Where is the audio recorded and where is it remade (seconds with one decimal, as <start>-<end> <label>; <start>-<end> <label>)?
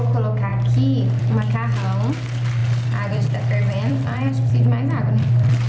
0.0-2.6 recorded; 2.6-5.7 remade